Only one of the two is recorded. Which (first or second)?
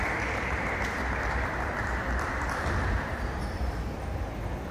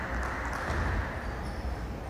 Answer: second